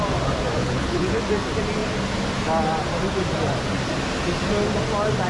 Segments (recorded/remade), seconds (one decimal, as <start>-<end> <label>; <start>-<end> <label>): 0.0-0.6 recorded; 0.6-1.2 remade; 1.2-5.3 recorded